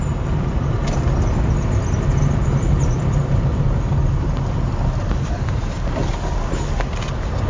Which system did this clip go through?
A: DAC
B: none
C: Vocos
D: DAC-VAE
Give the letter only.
B